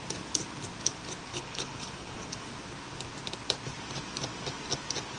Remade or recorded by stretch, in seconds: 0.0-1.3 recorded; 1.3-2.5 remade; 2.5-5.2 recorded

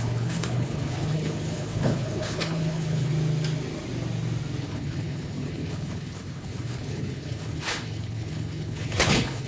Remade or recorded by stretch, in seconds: 0.0-3.1 remade; 3.1-4.6 recorded; 4.6-9.5 remade